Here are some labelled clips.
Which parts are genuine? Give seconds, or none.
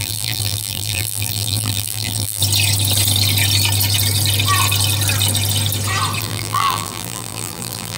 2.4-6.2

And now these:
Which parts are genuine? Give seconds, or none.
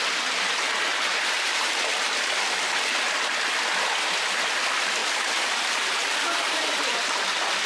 0.0-0.9; 1.9-5.0; 7.1-7.7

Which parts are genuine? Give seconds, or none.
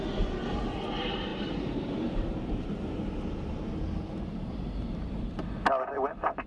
0.0-1.3; 5.2-6.5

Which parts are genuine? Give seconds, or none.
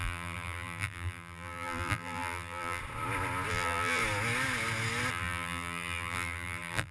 2.8-3.5; 4.0-5.1